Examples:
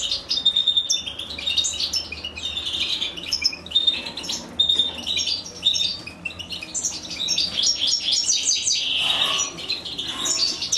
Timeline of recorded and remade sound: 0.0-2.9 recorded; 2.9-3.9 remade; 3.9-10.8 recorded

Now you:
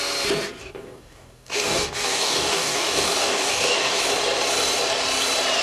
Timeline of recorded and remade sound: 0.0-0.6 recorded; 0.6-4.0 remade; 4.0-5.6 recorded

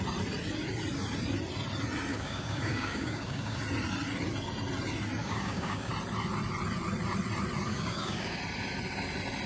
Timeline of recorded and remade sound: 0.0-2.1 recorded; 2.1-3.6 remade; 3.6-5.2 recorded; 5.2-5.9 remade; 5.9-7.7 recorded; 7.7-8.4 remade; 8.4-9.5 recorded

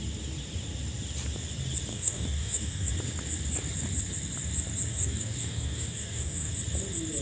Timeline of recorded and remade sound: 0.0-1.9 recorded; 1.9-2.9 remade; 2.9-4.9 recorded; 4.9-6.5 remade; 6.5-7.2 recorded

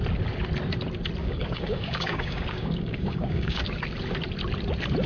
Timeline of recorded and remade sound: 0.0-1.2 recorded; 1.2-3.6 remade; 3.6-5.1 recorded

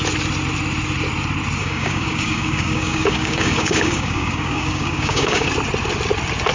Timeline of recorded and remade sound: 0.0-1.6 recorded; 1.6-5.5 remade; 5.5-6.5 recorded